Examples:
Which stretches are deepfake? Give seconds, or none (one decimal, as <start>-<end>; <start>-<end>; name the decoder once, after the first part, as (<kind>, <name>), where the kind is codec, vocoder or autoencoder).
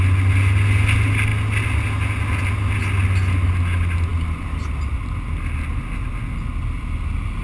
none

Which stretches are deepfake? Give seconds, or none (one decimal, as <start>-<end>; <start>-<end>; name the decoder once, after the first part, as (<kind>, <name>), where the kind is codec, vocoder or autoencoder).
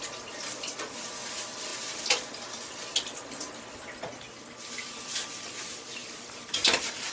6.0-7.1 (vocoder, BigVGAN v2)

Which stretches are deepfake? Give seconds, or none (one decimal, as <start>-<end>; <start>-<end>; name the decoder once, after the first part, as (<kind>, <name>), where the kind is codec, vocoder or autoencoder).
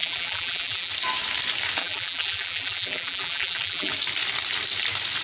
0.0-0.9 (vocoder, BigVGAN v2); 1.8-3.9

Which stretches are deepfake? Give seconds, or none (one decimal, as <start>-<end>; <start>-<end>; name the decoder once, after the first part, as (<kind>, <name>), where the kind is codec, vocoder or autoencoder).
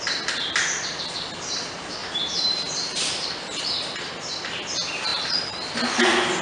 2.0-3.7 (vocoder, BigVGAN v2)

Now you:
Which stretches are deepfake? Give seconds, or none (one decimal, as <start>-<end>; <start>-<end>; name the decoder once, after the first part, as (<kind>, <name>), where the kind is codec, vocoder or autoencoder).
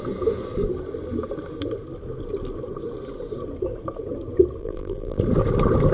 4.6-5.2 (vocoder, BigVGAN v2)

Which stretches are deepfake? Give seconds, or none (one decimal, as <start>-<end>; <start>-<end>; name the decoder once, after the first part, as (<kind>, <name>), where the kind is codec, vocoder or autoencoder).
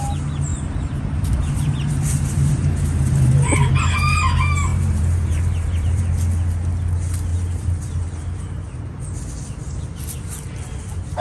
0.5-3.7 (vocoder, BigVGAN v2); 4.7-6.0; 7.3-8.9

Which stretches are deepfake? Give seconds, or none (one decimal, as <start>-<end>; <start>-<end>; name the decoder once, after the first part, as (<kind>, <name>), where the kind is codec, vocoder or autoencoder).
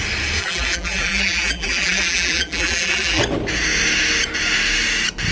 0.4-3.2 (vocoder, BigVGAN v2)